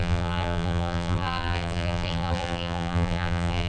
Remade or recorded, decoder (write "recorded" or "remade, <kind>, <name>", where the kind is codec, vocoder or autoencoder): remade, vocoder, BigVGAN v2